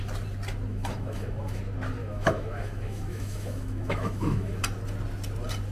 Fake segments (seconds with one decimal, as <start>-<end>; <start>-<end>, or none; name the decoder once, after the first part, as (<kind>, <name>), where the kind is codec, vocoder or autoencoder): 0.7-1.6 (autoencoder, DAC-VAE); 2.0-4.6